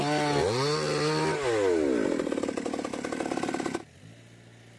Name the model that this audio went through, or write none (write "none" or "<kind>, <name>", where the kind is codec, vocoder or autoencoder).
none